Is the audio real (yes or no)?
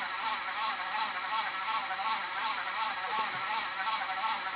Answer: yes